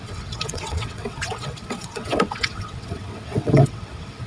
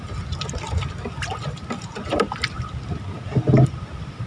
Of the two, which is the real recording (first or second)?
second